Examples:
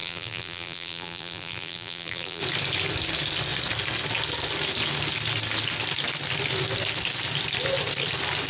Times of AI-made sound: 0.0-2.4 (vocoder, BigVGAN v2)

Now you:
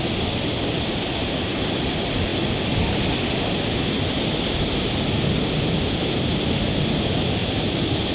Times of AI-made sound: none

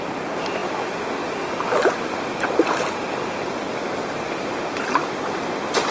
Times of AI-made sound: none

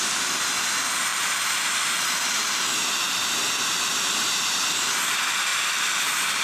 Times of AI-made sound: 1.1-4.9 (vocoder, BigVGAN v2); 5.5-6.4

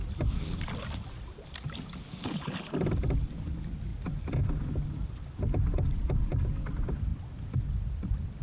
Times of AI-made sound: 7.1-8.4 (vocoder, BigVGAN v2)